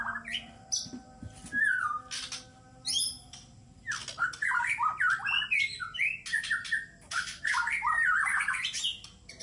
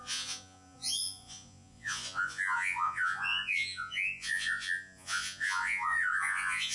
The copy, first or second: second